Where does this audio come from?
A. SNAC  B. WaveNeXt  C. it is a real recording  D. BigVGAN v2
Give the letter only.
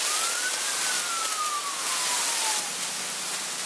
C